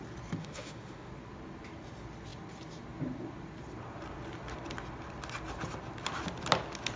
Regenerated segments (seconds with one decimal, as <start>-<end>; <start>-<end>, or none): 0.4-1.1